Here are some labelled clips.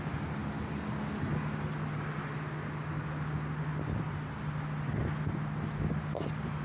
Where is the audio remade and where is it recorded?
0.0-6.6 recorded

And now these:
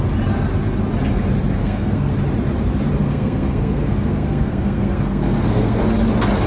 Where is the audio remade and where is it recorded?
0.0-1.6 recorded; 1.6-2.1 remade; 2.1-3.0 recorded; 3.0-5.8 remade; 5.8-6.5 recorded

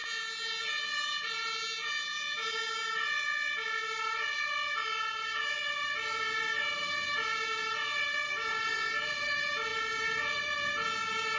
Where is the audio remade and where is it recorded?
0.0-11.4 recorded